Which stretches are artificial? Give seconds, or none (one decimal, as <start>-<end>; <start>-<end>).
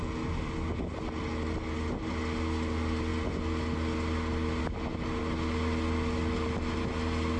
none